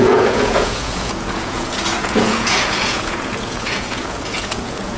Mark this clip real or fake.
fake